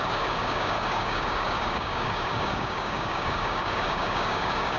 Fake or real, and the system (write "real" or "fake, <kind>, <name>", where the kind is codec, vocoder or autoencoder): fake, codec, DAC